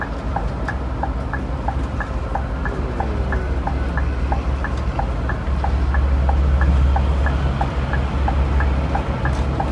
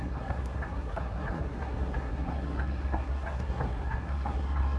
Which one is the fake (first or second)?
second